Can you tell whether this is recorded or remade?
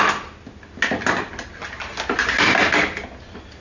recorded